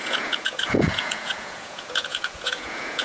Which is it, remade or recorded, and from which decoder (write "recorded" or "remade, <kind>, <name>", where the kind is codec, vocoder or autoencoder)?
remade, vocoder, Vocos